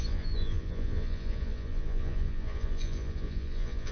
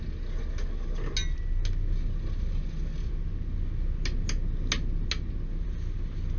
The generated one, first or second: first